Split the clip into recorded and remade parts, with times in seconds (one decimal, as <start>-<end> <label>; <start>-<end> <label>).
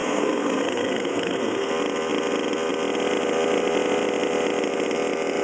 0.0-1.7 remade; 1.7-5.4 recorded